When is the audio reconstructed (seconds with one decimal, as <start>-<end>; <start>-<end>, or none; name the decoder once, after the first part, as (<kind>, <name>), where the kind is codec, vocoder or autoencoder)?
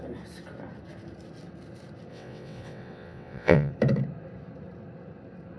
2.1-3.7 (vocoder, WaveNeXt)